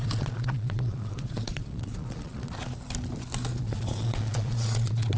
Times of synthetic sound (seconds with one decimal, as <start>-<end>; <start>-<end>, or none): 0.0-2.6; 3.6-5.2